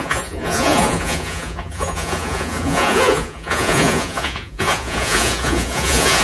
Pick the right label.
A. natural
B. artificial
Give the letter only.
B